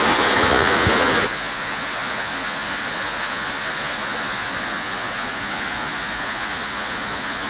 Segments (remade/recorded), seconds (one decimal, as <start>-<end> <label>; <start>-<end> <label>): 0.0-7.5 remade